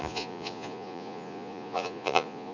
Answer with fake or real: fake